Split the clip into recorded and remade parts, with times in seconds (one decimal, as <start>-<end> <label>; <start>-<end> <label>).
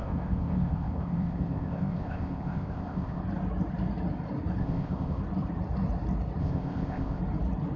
0.0-3.2 remade; 3.2-4.6 recorded; 4.6-5.2 remade; 5.2-6.4 recorded; 6.4-7.2 remade; 7.2-7.8 recorded